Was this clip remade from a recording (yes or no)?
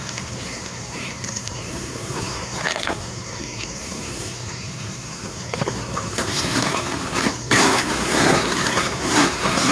yes